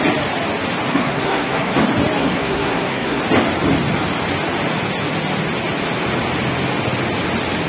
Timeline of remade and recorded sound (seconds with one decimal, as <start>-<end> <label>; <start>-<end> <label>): 0.0-0.9 recorded; 0.9-1.7 remade; 1.7-2.2 recorded; 2.2-3.2 remade; 3.2-7.7 recorded